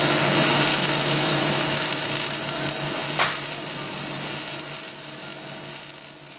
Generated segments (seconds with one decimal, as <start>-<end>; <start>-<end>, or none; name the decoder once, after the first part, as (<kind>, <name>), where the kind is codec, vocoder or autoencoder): 0.7-2.4 (autoencoder, DAC-VAE)